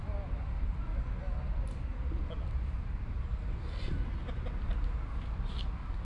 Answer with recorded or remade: recorded